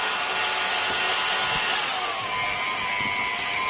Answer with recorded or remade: recorded